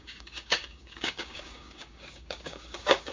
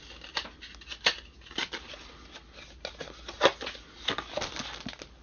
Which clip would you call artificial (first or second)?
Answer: first